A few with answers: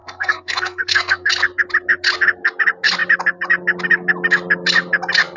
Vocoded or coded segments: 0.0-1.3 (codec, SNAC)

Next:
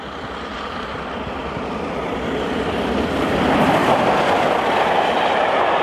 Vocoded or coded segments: 0.5-4.0 (vocoder, BigVGAN v2)

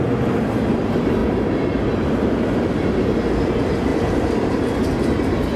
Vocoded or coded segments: none